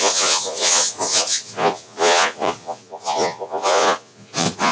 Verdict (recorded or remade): remade